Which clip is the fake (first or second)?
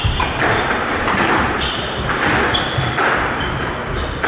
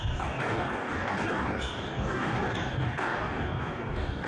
second